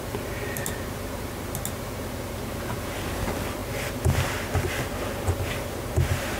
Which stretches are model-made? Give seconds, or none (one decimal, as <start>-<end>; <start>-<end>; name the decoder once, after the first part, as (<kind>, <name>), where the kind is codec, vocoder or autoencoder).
none